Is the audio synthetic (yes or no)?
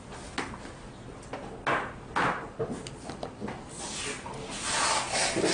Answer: no